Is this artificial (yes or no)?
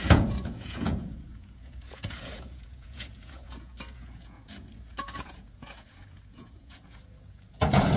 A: yes